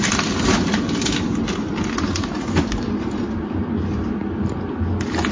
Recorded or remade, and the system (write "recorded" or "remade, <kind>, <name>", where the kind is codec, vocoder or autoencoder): recorded